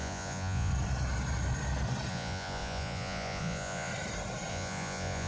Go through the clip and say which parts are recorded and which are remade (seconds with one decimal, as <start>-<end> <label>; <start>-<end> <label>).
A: 0.0-0.7 remade; 0.7-2.1 recorded; 2.1-3.9 remade; 3.9-4.5 recorded; 4.5-5.3 remade

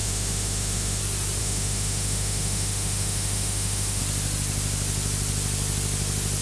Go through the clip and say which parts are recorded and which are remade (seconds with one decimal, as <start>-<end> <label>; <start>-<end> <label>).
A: 0.0-1.0 remade; 1.0-1.4 recorded; 1.4-4.0 remade; 4.0-6.4 recorded

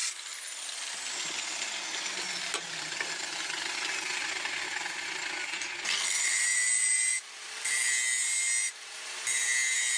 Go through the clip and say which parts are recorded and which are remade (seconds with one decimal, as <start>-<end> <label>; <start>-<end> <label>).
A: 0.0-10.0 recorded

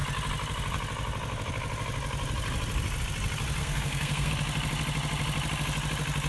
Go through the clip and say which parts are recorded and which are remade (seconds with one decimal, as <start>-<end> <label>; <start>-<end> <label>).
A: 0.0-3.6 recorded; 3.6-4.3 remade; 4.3-6.3 recorded

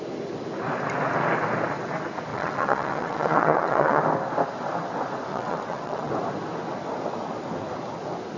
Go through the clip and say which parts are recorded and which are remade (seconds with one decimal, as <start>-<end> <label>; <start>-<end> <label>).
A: 0.0-2.3 recorded; 2.3-4.0 remade; 4.0-5.3 recorded; 5.3-6.1 remade; 6.1-8.4 recorded

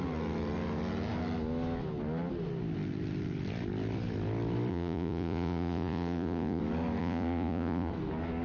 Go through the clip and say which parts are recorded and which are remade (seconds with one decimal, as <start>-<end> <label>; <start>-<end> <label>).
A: 0.0-4.7 recorded; 4.7-6.6 remade; 6.6-7.0 recorded; 7.0-7.9 remade; 7.9-8.4 recorded

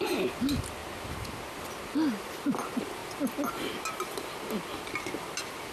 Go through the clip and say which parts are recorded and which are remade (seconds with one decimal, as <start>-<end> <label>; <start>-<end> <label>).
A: 0.0-5.7 recorded

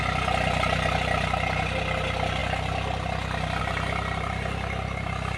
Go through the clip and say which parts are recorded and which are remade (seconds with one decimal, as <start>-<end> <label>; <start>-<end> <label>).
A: 0.0-5.4 recorded